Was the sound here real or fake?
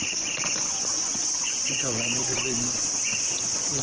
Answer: fake